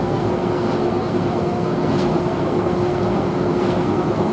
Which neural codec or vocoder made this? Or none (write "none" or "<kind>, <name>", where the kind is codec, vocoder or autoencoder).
codec, SNAC